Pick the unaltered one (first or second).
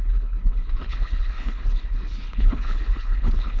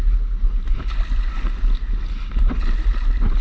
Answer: second